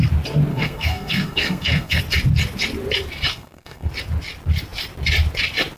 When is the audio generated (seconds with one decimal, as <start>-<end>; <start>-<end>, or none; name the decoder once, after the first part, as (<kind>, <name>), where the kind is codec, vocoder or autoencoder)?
0.5-2.0 (codec, SNAC); 3.3-3.9